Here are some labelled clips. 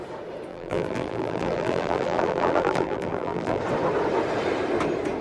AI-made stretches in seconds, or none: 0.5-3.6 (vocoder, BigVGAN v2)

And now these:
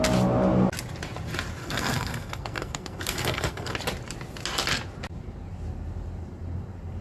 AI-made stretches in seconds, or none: 1.6-3.7 (codec, SNAC)

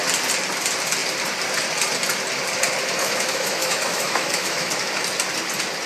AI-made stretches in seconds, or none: 3.0-4.7 (autoencoder, DAC-VAE)

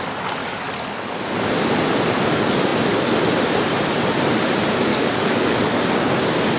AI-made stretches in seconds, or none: 0.4-1.2 (codec, DAC); 4.9-5.8

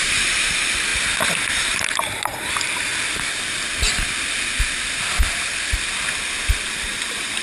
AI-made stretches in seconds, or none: 0.0-0.9 (vocoder, BigVGAN v2); 1.5-2.9; 6.7-7.4

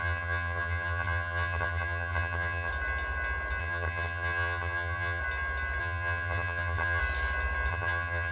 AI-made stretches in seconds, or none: 0.0-2.7 (vocoder, HiFi-GAN); 3.6-5.2; 5.8-7.0; 7.7-8.3

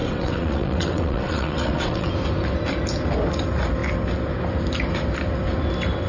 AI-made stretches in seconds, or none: 0.0-2.1 (vocoder, WaveNeXt)